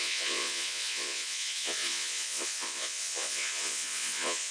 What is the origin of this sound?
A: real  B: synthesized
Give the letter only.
B